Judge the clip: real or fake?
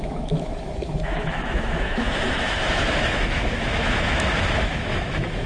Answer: fake